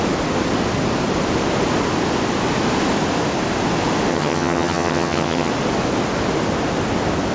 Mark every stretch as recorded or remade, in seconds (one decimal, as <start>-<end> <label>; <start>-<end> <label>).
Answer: 0.0-4.1 recorded; 4.1-5.5 remade; 5.5-7.3 recorded